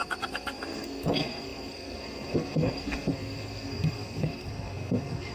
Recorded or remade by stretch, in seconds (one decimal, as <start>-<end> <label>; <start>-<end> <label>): 0.0-5.3 remade